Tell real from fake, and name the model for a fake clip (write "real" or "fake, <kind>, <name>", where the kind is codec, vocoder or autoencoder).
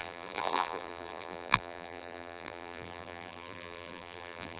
fake, vocoder, BigVGAN v2